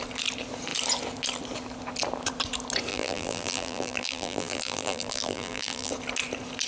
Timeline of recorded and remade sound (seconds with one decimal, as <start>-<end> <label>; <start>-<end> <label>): 0.0-2.9 recorded; 2.9-5.9 remade; 5.9-6.7 recorded

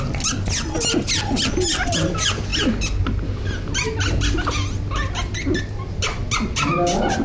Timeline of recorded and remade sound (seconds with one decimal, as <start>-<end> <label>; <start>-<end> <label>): 0.0-7.2 recorded

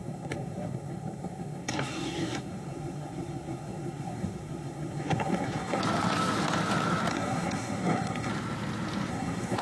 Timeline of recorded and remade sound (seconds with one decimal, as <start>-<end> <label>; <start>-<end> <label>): 0.0-5.8 remade; 5.8-7.1 recorded; 7.1-8.3 remade; 8.3-9.1 recorded; 9.1-9.6 remade

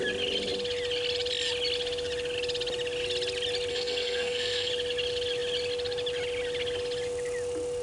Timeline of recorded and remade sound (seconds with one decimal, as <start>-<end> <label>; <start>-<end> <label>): 0.0-3.7 recorded; 3.7-4.7 remade; 4.7-7.8 recorded